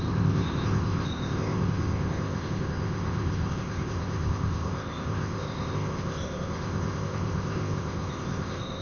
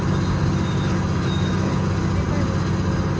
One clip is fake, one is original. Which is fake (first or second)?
first